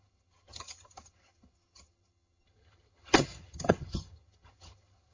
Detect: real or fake fake